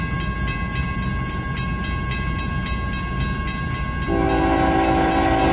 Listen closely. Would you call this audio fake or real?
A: real